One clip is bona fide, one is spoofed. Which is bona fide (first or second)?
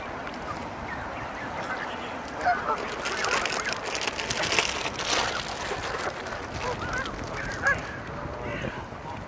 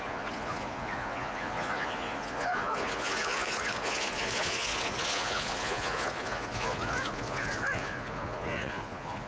first